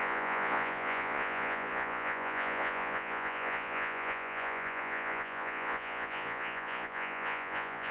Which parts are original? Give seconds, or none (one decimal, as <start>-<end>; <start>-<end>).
none